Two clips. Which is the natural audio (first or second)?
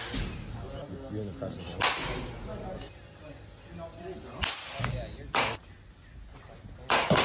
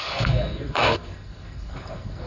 first